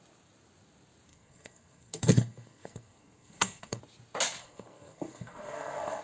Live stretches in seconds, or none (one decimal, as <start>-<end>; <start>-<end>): 0.0-1.1; 3.8-4.4